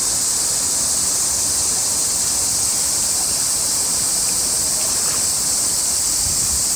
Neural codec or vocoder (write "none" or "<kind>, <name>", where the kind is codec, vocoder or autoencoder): none